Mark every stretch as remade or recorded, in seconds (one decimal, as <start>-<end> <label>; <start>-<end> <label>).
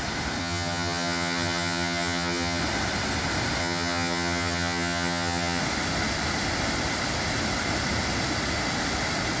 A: 0.0-0.4 recorded; 0.4-2.6 remade; 2.6-3.6 recorded; 3.6-5.6 remade; 5.6-9.4 recorded